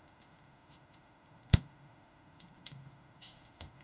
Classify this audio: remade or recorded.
remade